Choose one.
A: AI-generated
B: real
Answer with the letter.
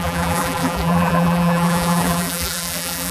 A